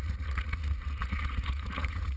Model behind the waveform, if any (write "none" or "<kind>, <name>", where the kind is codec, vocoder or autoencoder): vocoder, Vocos